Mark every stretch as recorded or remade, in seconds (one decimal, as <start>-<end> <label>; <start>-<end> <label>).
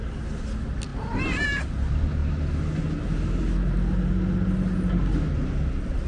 0.0-0.9 recorded; 0.9-1.7 remade; 1.7-6.1 recorded